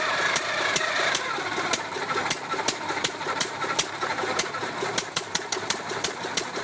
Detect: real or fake fake